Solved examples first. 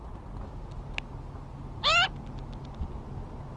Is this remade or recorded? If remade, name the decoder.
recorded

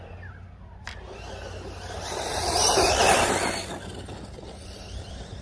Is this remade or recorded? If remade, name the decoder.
recorded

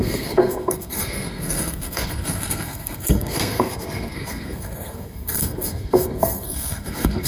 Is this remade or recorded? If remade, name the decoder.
remade, codec, SNAC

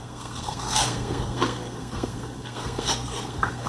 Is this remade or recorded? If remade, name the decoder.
remade, codec, SNAC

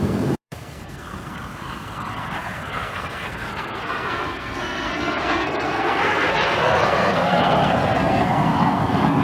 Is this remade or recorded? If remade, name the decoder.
remade, codec, SNAC